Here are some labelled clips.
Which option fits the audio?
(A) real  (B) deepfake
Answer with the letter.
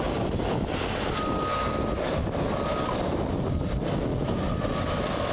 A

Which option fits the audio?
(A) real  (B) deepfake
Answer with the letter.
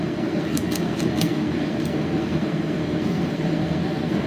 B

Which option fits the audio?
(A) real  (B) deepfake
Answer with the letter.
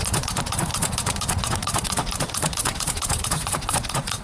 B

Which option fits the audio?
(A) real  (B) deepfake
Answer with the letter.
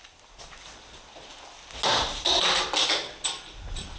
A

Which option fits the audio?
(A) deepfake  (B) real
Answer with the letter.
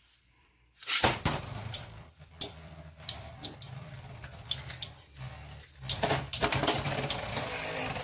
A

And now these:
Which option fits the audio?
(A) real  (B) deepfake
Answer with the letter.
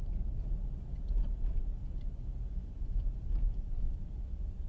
A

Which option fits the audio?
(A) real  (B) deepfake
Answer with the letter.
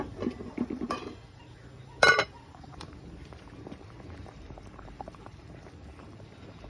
B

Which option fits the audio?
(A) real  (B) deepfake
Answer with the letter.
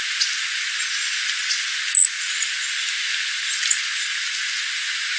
A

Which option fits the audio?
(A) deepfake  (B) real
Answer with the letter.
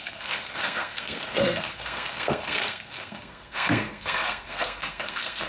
A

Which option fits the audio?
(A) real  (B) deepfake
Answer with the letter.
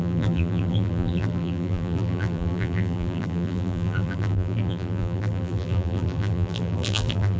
B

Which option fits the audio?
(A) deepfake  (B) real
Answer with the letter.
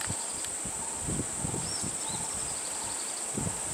B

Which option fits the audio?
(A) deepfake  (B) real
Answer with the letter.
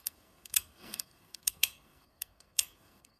A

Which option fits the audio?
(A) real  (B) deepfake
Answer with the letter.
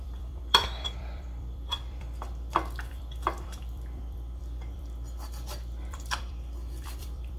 B